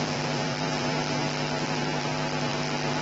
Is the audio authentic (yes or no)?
no